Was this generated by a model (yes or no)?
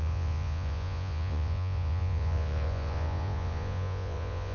yes